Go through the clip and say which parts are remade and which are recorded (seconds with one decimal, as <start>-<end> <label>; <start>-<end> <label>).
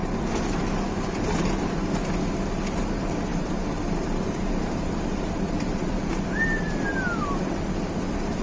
0.0-3.3 recorded; 3.3-7.0 remade; 7.0-8.4 recorded